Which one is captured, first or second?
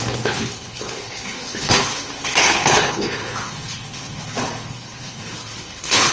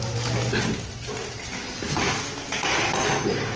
second